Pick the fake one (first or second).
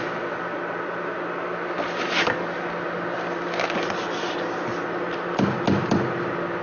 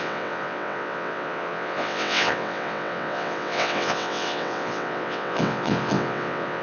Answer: second